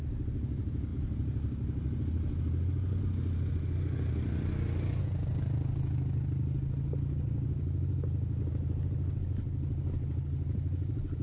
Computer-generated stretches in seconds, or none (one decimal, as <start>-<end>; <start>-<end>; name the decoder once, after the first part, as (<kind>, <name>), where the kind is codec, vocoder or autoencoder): none